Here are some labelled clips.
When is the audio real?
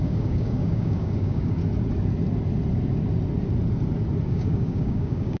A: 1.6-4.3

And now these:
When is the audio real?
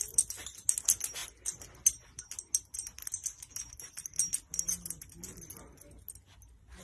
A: 0.0-6.8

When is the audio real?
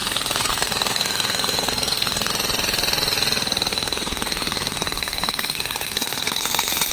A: 2.3-3.7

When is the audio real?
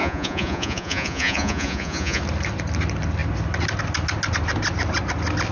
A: 2.2-5.5